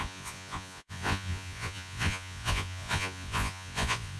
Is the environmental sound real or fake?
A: fake